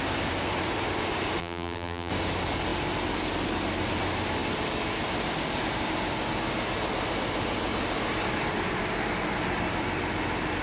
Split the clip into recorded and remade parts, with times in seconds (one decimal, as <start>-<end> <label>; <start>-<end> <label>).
0.0-1.4 recorded; 1.4-2.1 remade; 2.1-10.6 recorded